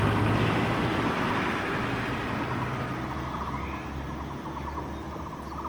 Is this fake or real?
real